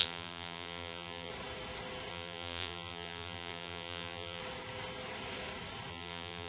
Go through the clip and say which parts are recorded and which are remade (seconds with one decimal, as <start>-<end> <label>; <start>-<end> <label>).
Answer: 0.0-1.3 remade; 1.3-2.1 recorded; 2.1-4.4 remade; 4.4-5.9 recorded; 5.9-6.5 remade